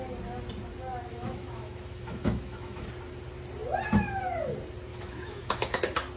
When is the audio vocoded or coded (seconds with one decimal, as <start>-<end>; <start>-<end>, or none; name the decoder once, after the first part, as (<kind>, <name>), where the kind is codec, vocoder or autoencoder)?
1.1-2.9 (autoencoder, DAC-VAE); 4.9-5.8